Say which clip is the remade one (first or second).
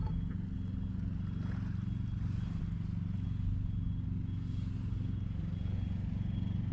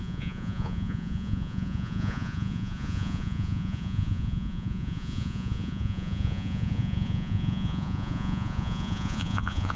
second